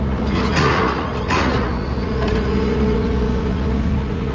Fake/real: fake